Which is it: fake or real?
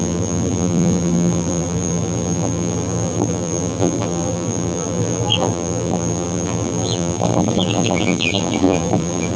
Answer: fake